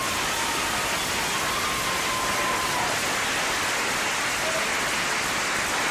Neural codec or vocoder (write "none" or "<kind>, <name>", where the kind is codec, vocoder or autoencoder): none